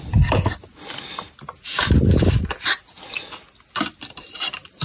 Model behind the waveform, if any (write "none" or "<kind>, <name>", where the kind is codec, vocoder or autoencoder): none